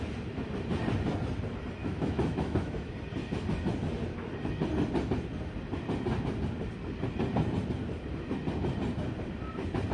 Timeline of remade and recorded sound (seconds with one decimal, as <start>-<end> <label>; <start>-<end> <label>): 0.0-1.8 recorded; 1.8-2.9 remade; 2.9-9.9 recorded